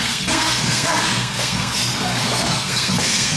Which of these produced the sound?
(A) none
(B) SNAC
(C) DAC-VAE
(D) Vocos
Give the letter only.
B